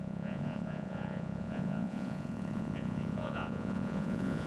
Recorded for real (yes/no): no